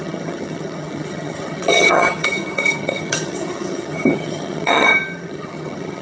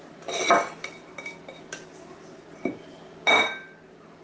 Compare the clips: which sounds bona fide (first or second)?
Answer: second